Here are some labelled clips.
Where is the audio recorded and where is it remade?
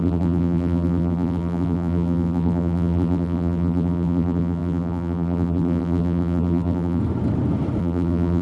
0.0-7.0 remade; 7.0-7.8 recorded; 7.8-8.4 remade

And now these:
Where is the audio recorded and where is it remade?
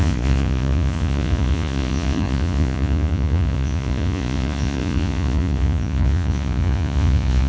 0.0-7.5 remade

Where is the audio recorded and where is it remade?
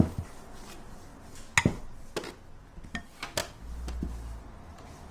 0.0-5.1 recorded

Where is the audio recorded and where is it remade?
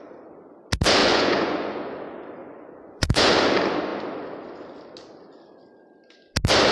0.0-1.0 recorded; 1.0-1.9 remade; 1.9-2.4 recorded; 2.4-3.3 remade; 3.3-6.7 recorded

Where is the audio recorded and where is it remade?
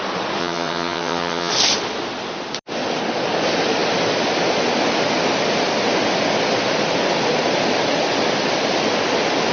0.0-0.4 recorded; 0.4-1.5 remade; 1.5-9.5 recorded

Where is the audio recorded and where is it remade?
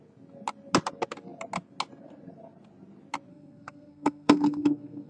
0.0-3.3 recorded; 3.3-5.1 remade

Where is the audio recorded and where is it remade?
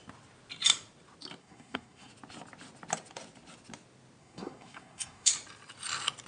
0.0-1.4 recorded; 1.4-2.1 remade; 2.1-4.2 recorded; 4.2-5.3 remade; 5.3-6.3 recorded